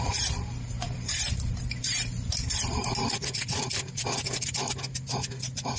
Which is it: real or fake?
fake